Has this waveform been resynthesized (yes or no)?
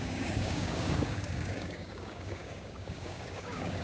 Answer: yes